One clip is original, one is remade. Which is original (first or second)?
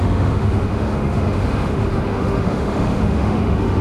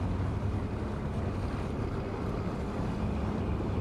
second